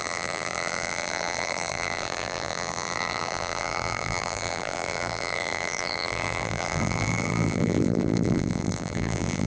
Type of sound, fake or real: fake